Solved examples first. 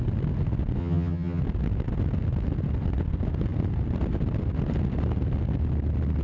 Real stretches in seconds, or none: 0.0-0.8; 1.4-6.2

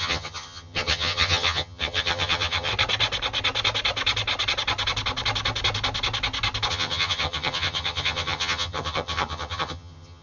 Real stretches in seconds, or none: 2.7-6.7

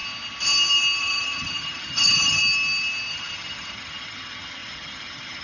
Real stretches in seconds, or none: 0.0-1.0; 2.4-3.1